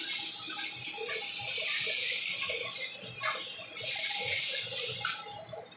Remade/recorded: recorded